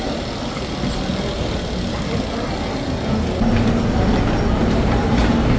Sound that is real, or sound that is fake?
real